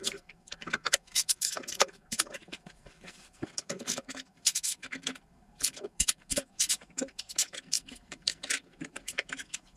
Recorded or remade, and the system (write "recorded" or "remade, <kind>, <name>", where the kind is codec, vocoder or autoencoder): remade, codec, SNAC